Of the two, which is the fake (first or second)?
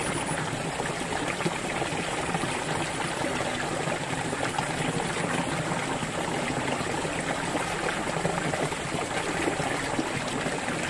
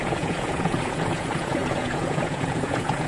second